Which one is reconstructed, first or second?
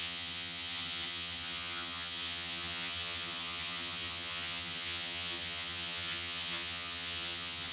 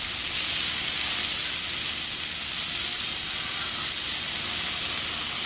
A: first